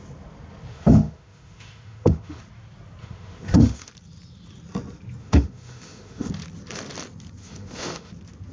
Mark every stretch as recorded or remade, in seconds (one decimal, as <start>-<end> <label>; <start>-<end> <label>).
0.0-0.7 recorded; 0.7-2.4 remade; 2.4-3.0 recorded; 3.0-3.9 remade; 3.9-5.2 recorded; 5.2-6.3 remade; 6.3-7.4 recorded; 7.4-8.1 remade; 8.1-8.5 recorded